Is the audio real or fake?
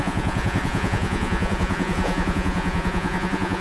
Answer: fake